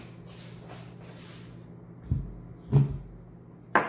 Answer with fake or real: real